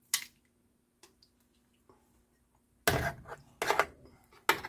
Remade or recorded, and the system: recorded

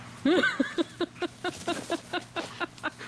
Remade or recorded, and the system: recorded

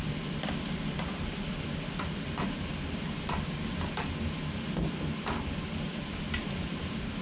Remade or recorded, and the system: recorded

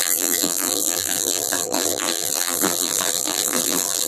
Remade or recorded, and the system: remade, vocoder, BigVGAN v2